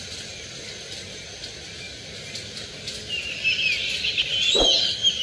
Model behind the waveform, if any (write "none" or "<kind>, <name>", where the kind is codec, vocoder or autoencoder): none